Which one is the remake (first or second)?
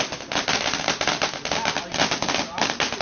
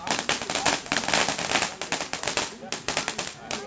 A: first